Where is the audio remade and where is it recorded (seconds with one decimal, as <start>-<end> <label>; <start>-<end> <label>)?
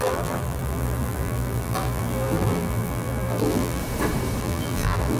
0.0-3.8 remade; 3.8-4.4 recorded; 4.4-5.2 remade